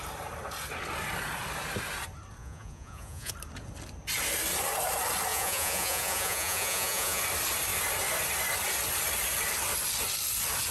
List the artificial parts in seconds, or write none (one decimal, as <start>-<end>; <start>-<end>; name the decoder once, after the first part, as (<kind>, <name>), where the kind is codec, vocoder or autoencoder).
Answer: 2.4-3.3 (vocoder, Vocos); 5.3-7.2